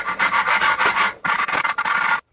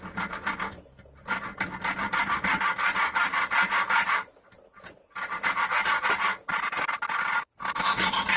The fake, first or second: first